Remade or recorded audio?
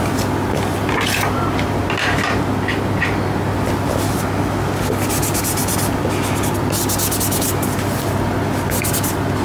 recorded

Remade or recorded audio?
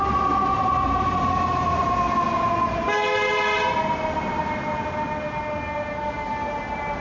recorded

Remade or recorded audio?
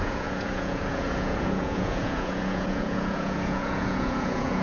remade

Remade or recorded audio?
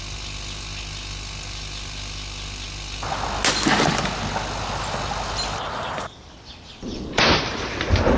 recorded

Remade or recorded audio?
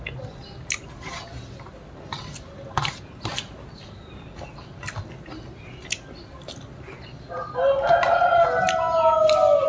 recorded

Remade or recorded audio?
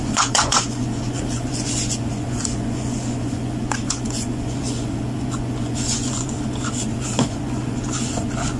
remade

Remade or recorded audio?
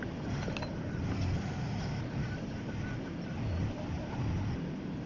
recorded